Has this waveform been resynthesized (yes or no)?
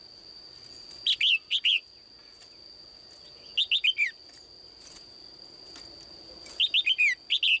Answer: no